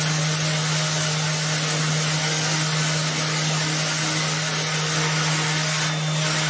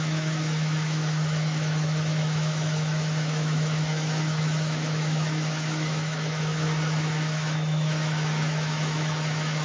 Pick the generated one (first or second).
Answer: second